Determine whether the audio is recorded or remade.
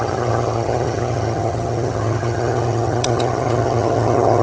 remade